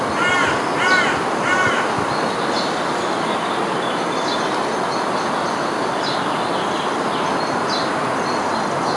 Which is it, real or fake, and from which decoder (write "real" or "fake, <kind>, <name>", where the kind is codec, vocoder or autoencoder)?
real